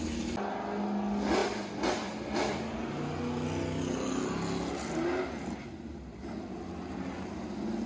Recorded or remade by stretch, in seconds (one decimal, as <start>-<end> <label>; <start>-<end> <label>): 0.0-7.9 recorded